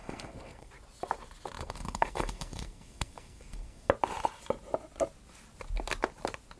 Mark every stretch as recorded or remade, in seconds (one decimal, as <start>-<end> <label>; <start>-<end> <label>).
0.0-0.7 remade; 0.7-1.6 recorded; 1.6-3.9 remade; 3.9-6.6 recorded